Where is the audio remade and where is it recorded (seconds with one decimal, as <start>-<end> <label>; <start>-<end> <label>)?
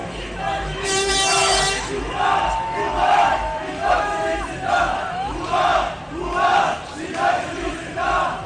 0.0-5.7 remade; 5.7-7.4 recorded; 7.4-8.5 remade